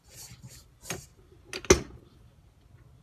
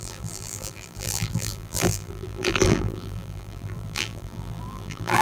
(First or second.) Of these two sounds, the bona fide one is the first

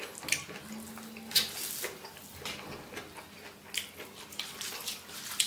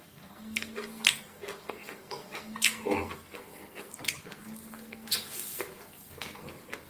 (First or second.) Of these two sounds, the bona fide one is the first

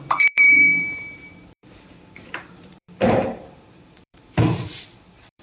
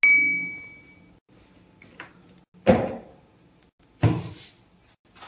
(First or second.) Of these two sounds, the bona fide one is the second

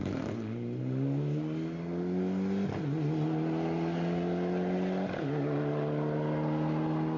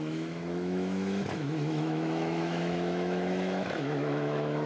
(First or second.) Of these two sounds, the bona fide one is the first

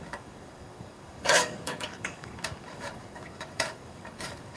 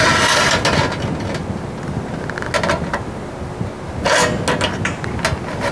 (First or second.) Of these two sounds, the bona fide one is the second